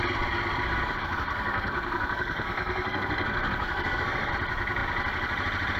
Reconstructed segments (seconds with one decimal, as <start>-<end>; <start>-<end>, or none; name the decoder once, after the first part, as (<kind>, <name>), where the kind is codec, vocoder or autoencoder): 0.8-4.3 (codec, SNAC)